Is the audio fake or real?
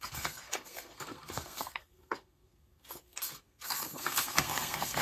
fake